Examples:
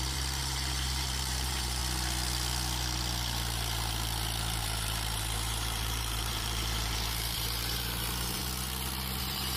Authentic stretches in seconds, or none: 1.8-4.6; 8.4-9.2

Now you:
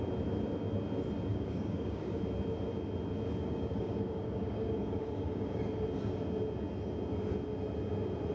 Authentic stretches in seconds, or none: 0.0-1.3; 2.2-3.4; 5.6-8.3

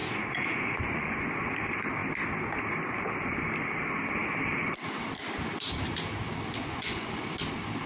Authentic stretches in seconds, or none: 1.3-6.6; 7.1-7.9

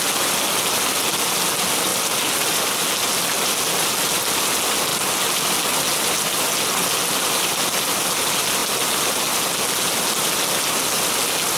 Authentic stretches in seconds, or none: 0.0-11.6

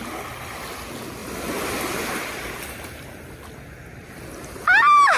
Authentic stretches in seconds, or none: 0.0-5.2